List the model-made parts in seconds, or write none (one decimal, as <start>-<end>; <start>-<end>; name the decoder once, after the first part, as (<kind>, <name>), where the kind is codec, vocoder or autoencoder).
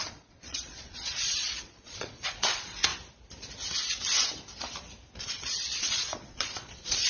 0.0-2.9 (vocoder, Vocos); 5.2-7.1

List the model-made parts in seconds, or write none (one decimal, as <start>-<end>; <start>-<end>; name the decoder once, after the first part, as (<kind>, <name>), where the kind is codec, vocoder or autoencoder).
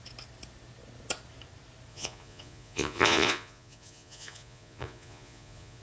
1.9-5.8 (vocoder, Vocos)